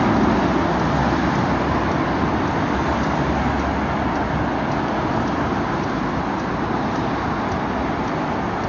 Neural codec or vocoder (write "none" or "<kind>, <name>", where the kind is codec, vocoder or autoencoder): none